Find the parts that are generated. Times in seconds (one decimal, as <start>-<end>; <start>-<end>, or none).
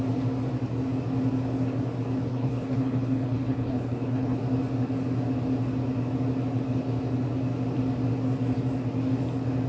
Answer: 2.3-4.4